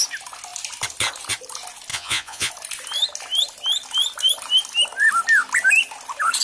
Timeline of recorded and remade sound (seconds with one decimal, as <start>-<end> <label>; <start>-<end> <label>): 0.0-1.9 recorded; 1.9-2.5 remade; 2.5-6.4 recorded